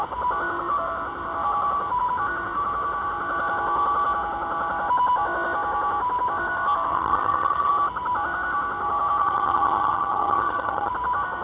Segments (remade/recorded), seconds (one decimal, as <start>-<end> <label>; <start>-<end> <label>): 0.0-6.9 recorded; 6.9-7.7 remade; 7.7-9.2 recorded; 9.2-10.9 remade; 10.9-11.4 recorded